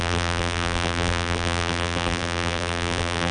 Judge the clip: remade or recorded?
remade